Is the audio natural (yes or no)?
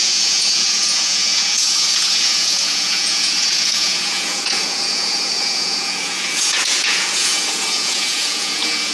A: no